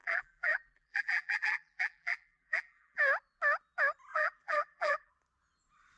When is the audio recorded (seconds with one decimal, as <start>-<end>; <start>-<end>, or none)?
3.0-4.1; 5.1-6.0